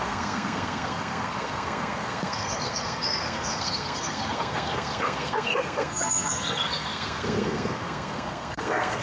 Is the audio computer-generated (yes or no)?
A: yes